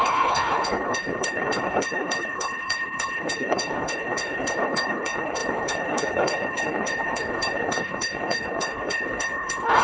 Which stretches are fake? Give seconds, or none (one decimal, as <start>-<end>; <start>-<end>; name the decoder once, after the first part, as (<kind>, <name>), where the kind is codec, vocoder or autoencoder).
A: 0.0-9.8 (codec, HILCodec)